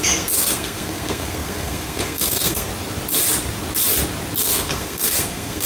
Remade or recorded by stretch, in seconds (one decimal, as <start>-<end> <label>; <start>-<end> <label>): 0.0-2.7 remade; 2.7-4.4 recorded; 4.4-5.7 remade